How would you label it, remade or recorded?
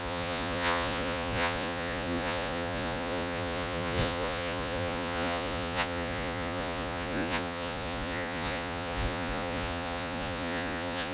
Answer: remade